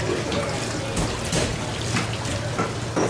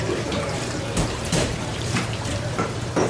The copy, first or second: second